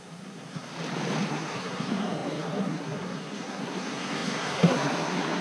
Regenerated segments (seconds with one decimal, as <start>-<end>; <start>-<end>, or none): 0.0-0.7; 1.3-5.4